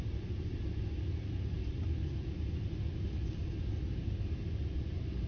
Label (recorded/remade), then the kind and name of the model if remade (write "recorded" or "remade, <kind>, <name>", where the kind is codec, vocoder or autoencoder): recorded